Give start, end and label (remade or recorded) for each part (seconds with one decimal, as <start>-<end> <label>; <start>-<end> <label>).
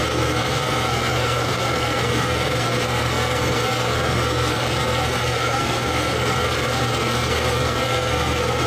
0.0-8.7 remade